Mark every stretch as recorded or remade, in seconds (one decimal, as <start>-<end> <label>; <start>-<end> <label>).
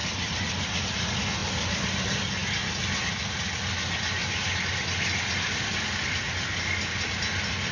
0.0-7.7 recorded